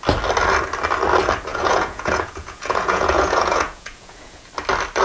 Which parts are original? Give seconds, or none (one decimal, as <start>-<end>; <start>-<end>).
0.0-1.5; 4.5-5.0